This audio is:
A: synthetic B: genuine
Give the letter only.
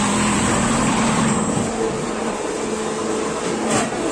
B